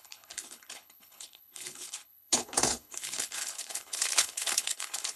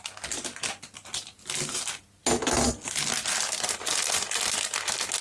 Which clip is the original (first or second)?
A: second